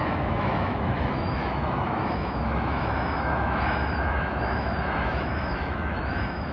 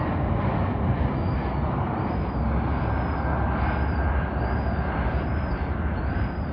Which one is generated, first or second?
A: first